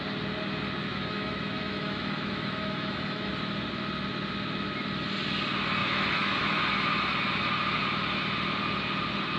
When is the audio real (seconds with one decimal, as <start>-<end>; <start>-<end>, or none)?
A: 0.0-0.8; 3.3-5.8; 6.6-9.4

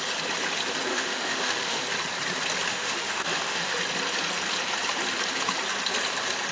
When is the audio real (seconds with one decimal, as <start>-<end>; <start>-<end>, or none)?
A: 0.0-0.9; 1.8-2.7; 3.8-6.5

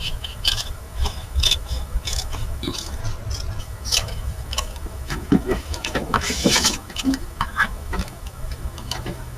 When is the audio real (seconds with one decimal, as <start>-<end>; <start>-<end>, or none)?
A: 3.0-3.6

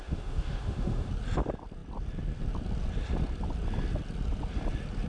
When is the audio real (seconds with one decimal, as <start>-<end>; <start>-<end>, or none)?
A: 1.1-5.1

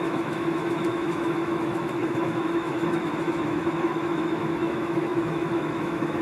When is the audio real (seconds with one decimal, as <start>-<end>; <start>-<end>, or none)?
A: none

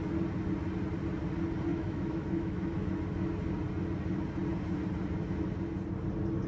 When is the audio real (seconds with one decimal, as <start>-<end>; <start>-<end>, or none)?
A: 0.0-1.7; 2.9-6.5

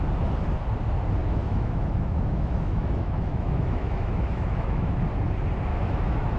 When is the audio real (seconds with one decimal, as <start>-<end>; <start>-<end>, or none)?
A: 0.0-1.2; 5.0-5.7

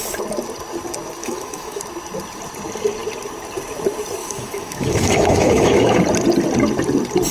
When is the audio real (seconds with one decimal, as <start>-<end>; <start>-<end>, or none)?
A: 0.0-1.2; 1.8-4.2; 6.0-7.3